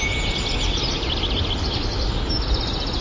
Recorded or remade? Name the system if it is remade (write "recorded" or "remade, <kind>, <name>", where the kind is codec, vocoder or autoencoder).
recorded